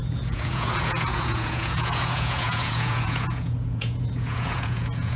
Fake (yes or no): yes